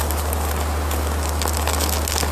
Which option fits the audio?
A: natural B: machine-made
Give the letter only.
A